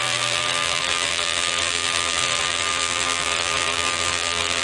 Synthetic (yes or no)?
yes